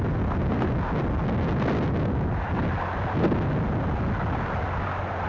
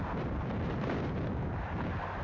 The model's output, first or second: second